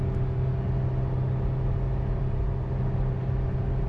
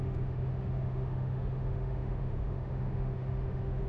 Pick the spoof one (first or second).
second